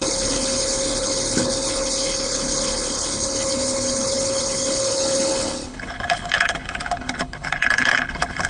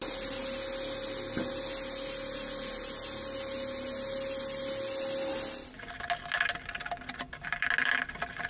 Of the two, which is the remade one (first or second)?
first